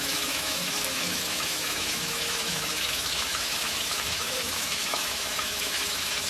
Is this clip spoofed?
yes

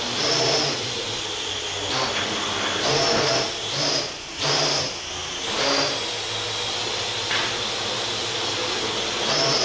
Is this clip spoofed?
no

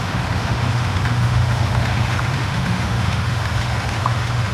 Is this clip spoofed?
yes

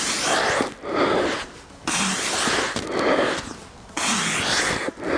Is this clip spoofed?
no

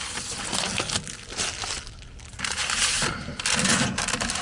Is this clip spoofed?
no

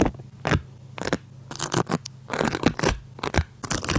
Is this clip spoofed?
no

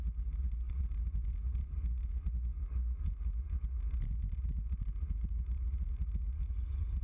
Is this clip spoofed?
no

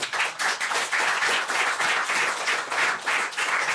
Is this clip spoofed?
yes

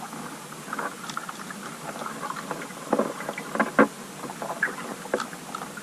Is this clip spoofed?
no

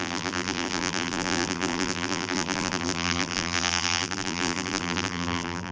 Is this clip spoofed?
yes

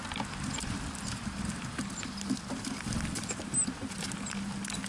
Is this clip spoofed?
no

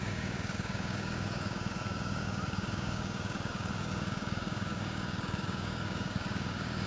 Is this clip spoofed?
yes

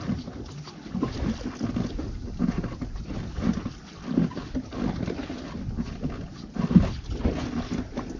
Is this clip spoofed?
no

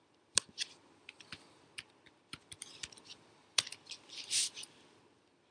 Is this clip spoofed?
yes